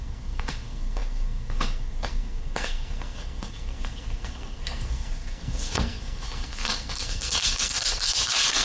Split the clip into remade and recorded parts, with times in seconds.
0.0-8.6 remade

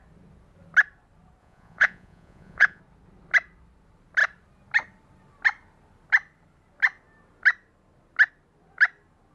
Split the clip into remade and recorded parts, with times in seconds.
0.0-1.4 recorded; 1.4-2.8 remade; 2.8-9.3 recorded

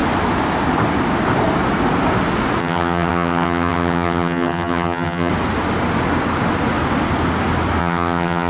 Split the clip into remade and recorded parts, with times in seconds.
0.0-2.6 recorded; 2.6-5.3 remade; 5.3-7.8 recorded; 7.8-8.5 remade

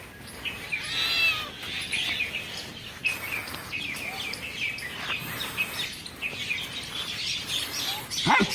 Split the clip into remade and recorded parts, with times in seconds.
0.0-8.5 recorded

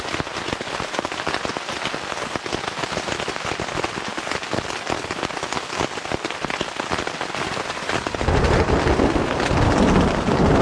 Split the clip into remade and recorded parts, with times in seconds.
0.0-10.6 recorded